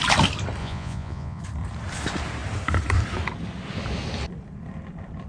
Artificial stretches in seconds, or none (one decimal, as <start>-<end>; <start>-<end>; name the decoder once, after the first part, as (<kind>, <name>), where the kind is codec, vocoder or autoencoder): 0.6-1.4 (vocoder, Vocos)